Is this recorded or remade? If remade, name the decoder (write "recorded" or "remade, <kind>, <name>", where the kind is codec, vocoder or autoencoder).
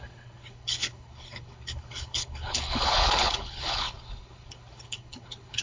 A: remade, codec, HILCodec